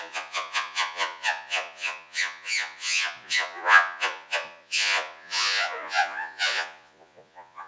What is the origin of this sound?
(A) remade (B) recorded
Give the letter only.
A